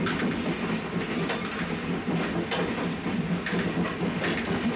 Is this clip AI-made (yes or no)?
no